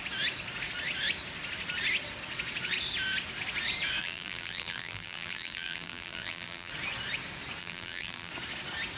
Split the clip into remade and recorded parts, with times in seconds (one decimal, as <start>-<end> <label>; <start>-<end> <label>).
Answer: 0.0-4.0 recorded; 4.0-6.7 remade; 6.7-7.6 recorded; 7.6-8.3 remade; 8.3-9.0 recorded